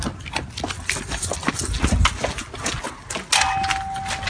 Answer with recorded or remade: recorded